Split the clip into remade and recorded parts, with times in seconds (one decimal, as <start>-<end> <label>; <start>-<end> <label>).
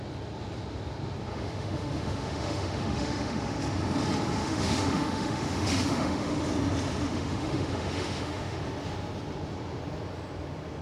0.0-1.3 recorded; 1.3-3.6 remade; 3.6-4.4 recorded; 4.4-6.4 remade; 6.4-7.1 recorded; 7.1-8.6 remade; 8.6-10.8 recorded